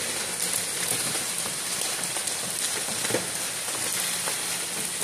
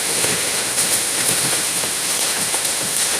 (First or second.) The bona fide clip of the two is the first